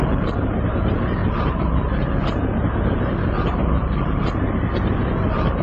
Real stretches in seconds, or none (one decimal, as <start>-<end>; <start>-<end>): 0.0-5.6